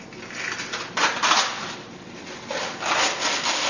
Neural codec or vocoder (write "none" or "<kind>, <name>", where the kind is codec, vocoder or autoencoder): none